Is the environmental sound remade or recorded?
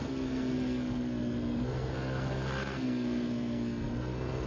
remade